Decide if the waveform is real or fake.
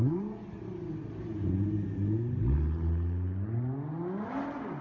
real